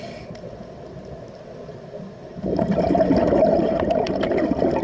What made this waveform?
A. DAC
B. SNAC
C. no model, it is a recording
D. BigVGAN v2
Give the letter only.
C